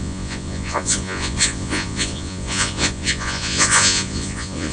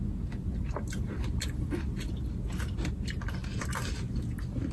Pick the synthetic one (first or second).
first